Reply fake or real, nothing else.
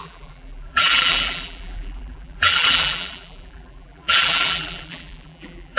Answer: fake